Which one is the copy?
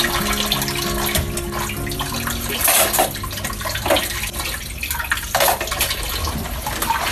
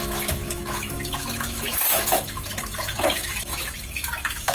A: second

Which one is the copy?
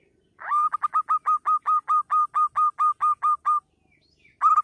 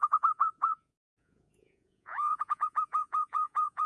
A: second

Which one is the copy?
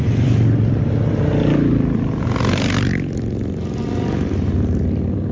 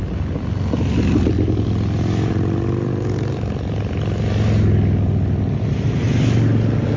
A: first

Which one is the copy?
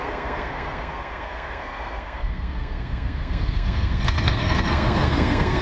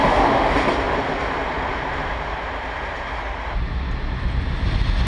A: first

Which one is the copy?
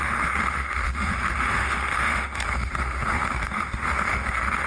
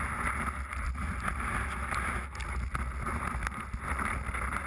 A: first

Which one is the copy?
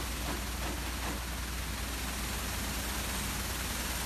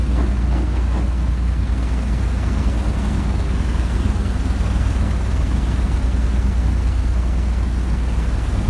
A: second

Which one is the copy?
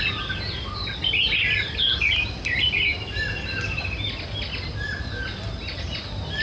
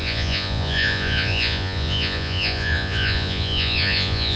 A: second